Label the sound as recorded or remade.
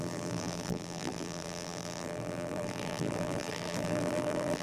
remade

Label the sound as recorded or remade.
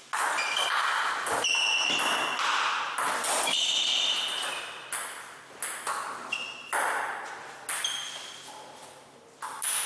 recorded